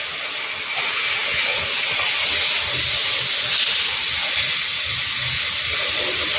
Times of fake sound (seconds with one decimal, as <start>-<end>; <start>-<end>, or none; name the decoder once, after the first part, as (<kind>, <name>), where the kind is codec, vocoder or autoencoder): none